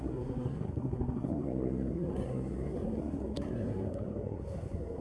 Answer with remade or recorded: remade